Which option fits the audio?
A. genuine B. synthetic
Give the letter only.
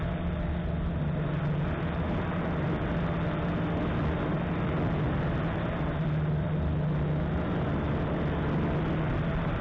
A